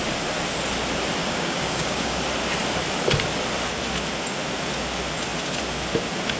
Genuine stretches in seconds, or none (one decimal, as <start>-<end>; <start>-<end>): 0.0-1.2; 2.2-6.4